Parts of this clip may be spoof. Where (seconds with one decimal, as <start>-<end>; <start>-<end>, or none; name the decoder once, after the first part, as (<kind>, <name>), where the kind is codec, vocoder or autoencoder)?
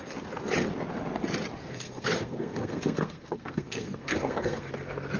1.6-4.7 (codec, SNAC)